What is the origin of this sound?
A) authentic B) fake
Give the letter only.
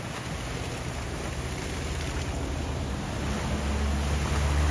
A